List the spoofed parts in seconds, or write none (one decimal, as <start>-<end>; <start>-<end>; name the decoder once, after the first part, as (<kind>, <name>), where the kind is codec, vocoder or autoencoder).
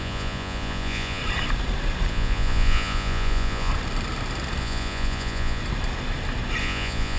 0.0-1.2 (vocoder, Vocos); 2.1-3.7; 4.6-5.6; 6.6-7.2